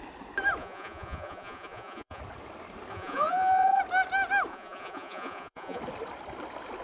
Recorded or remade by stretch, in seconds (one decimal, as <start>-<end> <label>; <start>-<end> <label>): 0.0-0.6 recorded; 0.6-2.2 remade; 2.2-2.9 recorded; 2.9-3.8 remade; 3.8-4.5 recorded; 4.5-5.8 remade; 5.8-6.8 recorded